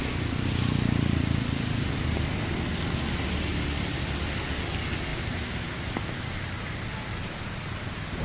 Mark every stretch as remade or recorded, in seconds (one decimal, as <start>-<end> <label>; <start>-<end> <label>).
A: 0.0-5.1 recorded; 5.1-6.4 remade; 6.4-8.2 recorded

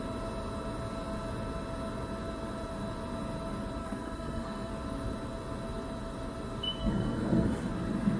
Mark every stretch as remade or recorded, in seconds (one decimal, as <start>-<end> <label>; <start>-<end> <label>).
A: 0.0-3.8 recorded; 3.8-4.7 remade; 4.7-6.8 recorded; 6.8-7.7 remade; 7.7-8.2 recorded

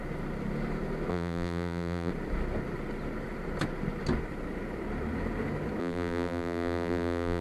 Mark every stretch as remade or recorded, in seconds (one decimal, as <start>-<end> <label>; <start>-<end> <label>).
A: 0.0-1.1 recorded; 1.1-2.1 remade; 2.1-5.8 recorded; 5.8-7.4 remade

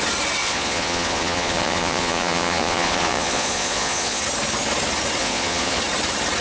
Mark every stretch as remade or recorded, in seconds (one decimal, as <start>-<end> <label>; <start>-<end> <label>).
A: 0.0-0.4 recorded; 0.4-4.2 remade; 4.2-5.2 recorded; 5.2-5.8 remade; 5.8-6.4 recorded

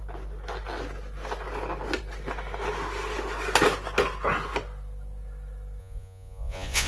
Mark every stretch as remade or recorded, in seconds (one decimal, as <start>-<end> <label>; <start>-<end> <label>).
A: 0.0-5.8 recorded; 5.8-6.9 remade

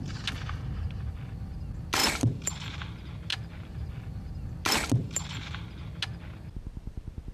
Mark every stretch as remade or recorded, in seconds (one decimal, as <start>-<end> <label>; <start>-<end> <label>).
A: 0.0-2.0 recorded; 2.0-2.7 remade; 2.7-3.3 recorded; 3.3-4.5 remade; 4.5-5.0 recorded; 5.0-5.6 remade; 5.6-7.3 recorded

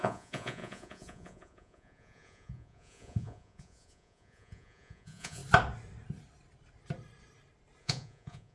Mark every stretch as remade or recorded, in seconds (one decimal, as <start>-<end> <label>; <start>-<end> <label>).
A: 0.0-5.4 remade; 5.4-7.8 recorded; 7.8-8.5 remade